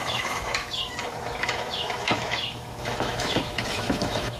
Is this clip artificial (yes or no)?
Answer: yes